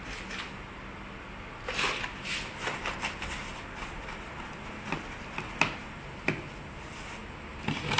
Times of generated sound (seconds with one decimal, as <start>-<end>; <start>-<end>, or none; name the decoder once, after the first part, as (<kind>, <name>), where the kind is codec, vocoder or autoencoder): none